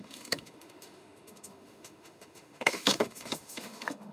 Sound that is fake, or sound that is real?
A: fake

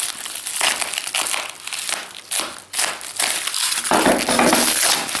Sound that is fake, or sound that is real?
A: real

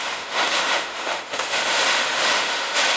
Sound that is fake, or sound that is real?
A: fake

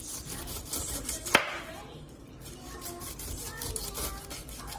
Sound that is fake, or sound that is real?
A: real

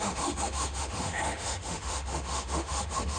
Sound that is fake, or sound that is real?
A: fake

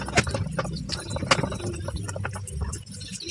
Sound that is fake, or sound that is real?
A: real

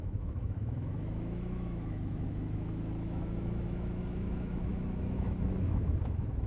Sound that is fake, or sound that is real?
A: fake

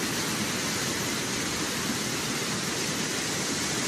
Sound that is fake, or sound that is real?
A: real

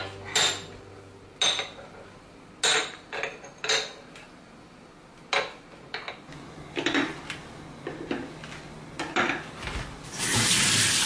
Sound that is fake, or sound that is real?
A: real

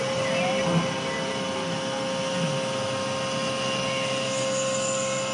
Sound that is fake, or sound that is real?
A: real